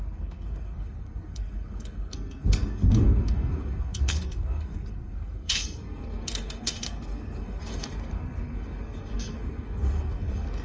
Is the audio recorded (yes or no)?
no